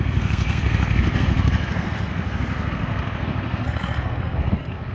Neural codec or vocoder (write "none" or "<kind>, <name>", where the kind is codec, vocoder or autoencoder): codec, SNAC